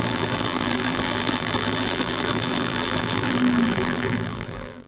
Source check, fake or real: fake